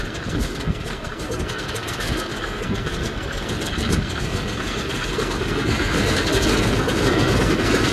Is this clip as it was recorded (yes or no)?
no